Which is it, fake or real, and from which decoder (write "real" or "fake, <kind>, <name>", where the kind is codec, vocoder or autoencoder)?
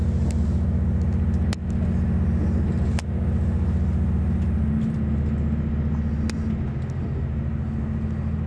real